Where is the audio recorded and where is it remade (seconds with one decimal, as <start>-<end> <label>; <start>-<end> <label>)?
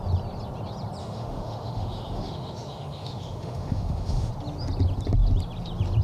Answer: 0.0-1.0 recorded; 1.0-4.3 remade; 4.3-6.0 recorded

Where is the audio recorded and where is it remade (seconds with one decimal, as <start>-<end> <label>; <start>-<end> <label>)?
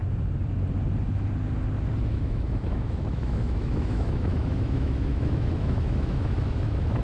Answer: 0.0-2.0 recorded; 2.0-7.0 remade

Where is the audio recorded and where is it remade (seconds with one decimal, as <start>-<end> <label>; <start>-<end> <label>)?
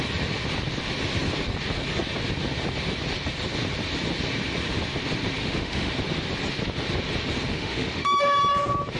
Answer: 0.0-5.4 recorded; 5.4-5.9 remade; 5.9-7.5 recorded; 7.5-8.4 remade; 8.4-9.0 recorded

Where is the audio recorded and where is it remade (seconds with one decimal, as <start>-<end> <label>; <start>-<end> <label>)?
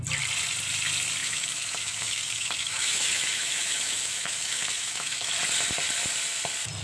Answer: 0.0-1.2 recorded; 1.2-5.3 remade; 5.3-6.8 recorded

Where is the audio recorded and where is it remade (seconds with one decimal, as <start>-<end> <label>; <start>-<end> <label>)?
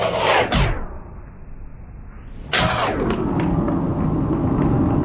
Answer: 0.0-5.0 recorded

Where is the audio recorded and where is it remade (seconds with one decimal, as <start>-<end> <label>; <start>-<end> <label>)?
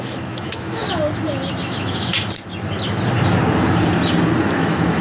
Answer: 0.0-0.8 remade; 0.8-1.6 recorded; 1.6-2.1 remade; 2.1-4.4 recorded; 4.4-5.0 remade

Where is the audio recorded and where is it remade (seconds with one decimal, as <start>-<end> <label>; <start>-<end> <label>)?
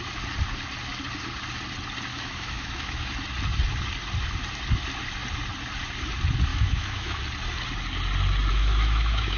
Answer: 0.0-2.1 recorded; 2.1-3.1 remade; 3.1-6.5 recorded; 6.5-7.2 remade; 7.2-8.5 recorded; 8.5-9.4 remade